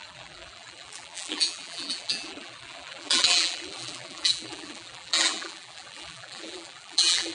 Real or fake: fake